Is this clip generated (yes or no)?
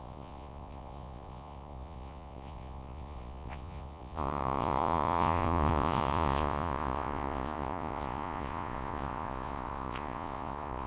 yes